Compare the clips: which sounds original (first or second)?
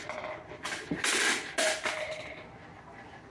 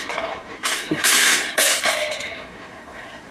first